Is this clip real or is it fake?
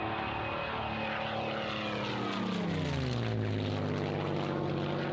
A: real